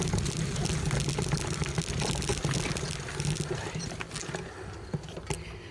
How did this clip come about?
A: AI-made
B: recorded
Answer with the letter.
B